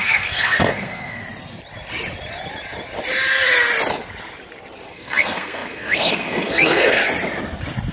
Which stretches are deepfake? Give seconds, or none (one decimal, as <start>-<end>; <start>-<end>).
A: 0.0-1.2; 4.9-7.0